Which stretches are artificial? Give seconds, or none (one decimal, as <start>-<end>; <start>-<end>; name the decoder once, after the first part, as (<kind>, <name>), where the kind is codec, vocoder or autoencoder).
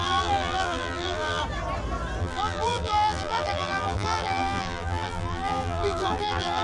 0.0-1.4 (vocoder, BigVGAN v2); 2.2-6.6